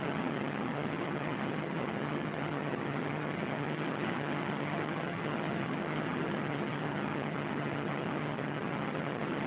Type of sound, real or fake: fake